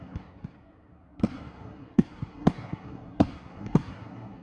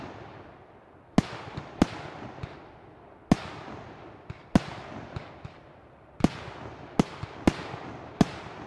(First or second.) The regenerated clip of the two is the first